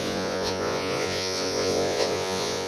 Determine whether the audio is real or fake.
fake